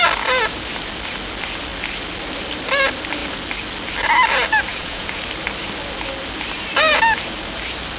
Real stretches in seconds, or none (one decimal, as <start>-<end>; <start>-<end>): 0.0-4.7; 5.2-8.0